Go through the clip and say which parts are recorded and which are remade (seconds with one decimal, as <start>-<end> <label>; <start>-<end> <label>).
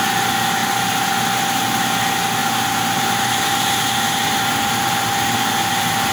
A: 0.0-0.6 recorded; 0.6-1.1 remade; 1.1-2.4 recorded; 2.4-5.5 remade; 5.5-6.1 recorded